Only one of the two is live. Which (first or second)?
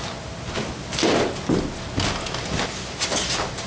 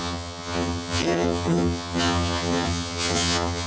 first